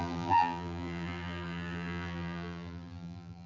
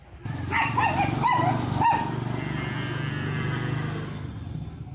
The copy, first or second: first